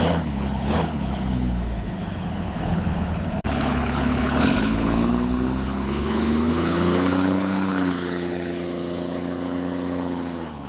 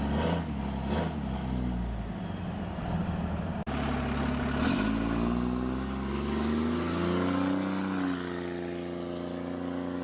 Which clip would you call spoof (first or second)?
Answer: first